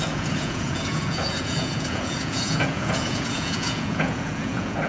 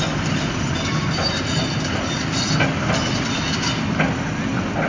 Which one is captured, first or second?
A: second